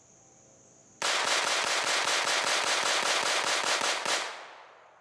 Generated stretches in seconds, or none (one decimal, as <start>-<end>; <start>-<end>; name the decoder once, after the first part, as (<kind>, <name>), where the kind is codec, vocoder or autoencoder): none